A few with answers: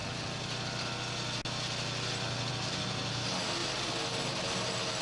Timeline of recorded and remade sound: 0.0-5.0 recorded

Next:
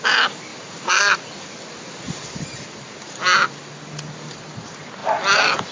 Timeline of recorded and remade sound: 0.0-1.7 recorded; 1.7-3.2 remade; 3.2-5.7 recorded

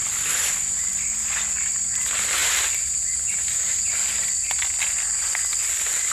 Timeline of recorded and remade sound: 0.0-6.1 recorded